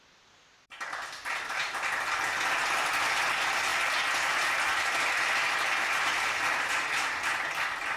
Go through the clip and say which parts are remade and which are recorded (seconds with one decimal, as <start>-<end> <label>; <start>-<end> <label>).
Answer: 0.0-8.0 recorded